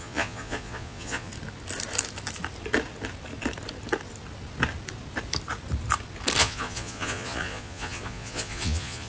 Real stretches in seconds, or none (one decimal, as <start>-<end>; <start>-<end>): 1.3-6.4